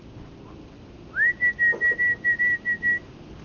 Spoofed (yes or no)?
no